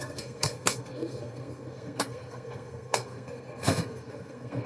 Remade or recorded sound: remade